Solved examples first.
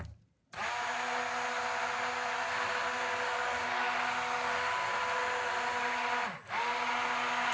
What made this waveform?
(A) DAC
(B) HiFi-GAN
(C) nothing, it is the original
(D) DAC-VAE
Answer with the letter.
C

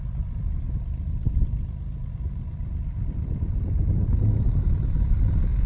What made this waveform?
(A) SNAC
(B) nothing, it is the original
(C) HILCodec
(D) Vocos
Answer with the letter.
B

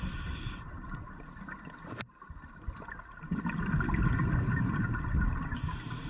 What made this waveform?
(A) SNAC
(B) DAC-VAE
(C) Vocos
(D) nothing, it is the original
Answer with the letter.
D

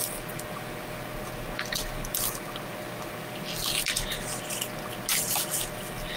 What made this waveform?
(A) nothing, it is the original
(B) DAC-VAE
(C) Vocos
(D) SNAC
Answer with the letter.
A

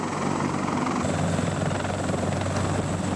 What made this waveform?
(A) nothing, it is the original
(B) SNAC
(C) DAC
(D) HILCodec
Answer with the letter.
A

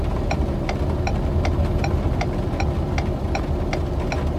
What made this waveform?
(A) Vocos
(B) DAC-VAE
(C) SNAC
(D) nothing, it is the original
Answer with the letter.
D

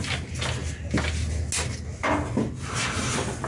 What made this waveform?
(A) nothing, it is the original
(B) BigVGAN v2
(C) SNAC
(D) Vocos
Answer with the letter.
A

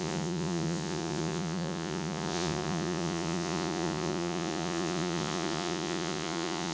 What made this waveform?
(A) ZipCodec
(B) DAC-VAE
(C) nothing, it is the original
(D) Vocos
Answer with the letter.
D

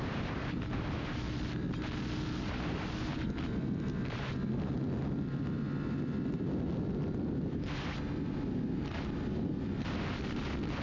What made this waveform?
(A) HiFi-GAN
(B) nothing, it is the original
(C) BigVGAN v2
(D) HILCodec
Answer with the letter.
B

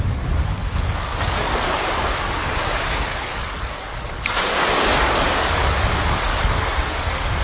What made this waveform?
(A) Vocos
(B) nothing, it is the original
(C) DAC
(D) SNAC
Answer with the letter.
C